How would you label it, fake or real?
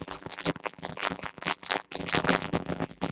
fake